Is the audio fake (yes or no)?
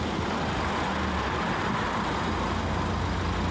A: no